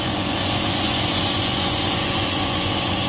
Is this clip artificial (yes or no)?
yes